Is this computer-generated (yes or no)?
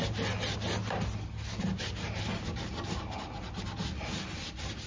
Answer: no